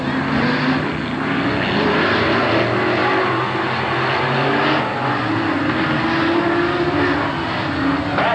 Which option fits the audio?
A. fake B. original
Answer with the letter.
B